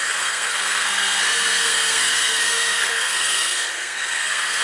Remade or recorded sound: remade